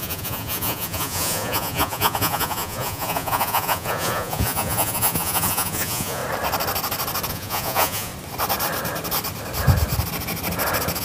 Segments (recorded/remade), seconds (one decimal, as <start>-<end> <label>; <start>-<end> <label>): 0.0-6.2 remade; 6.2-7.3 recorded; 7.3-8.1 remade; 8.1-11.0 recorded